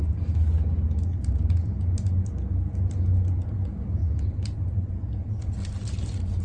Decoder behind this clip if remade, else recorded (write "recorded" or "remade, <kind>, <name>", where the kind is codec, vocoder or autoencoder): recorded